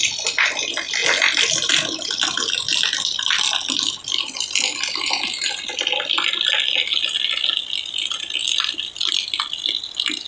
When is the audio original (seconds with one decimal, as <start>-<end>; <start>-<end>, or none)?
0.0-10.3